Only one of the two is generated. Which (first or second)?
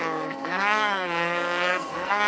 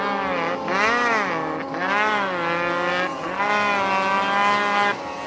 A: first